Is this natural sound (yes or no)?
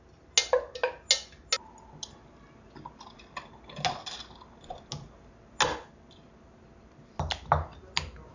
yes